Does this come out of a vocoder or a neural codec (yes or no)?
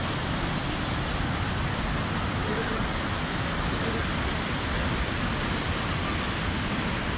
no